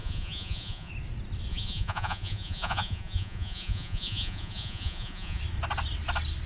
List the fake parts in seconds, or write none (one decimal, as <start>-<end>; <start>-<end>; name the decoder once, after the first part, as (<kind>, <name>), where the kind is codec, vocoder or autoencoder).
0.0-0.9 (vocoder, Vocos); 1.5-5.4